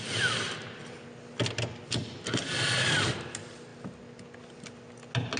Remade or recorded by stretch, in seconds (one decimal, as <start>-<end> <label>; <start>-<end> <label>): 0.0-5.4 recorded